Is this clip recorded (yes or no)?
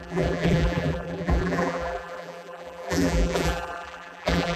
no